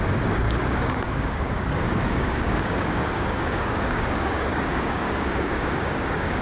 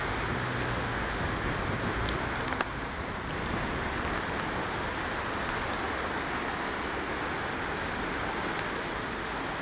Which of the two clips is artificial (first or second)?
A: first